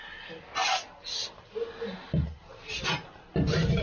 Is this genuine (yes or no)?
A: yes